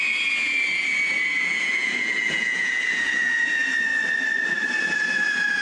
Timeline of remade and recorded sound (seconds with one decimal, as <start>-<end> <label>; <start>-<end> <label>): 0.0-3.9 remade; 3.9-4.8 recorded; 4.8-5.6 remade